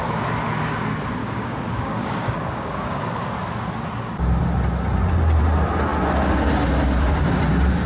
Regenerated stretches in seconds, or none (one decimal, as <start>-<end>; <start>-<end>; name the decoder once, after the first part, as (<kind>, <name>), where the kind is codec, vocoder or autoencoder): 1.2-3.0 (codec, DAC)